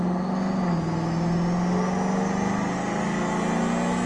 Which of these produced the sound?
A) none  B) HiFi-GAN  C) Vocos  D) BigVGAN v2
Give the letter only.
A